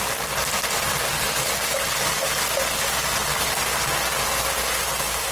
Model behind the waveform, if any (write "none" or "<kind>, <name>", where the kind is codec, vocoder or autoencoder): none